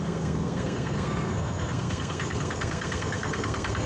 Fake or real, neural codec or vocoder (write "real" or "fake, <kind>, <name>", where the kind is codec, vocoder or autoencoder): fake, codec, SNAC